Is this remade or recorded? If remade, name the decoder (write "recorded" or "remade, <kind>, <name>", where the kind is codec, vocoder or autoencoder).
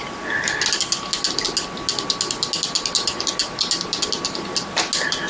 recorded